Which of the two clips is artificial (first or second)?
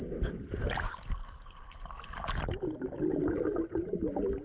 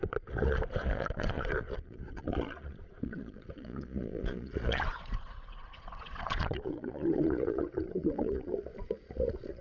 second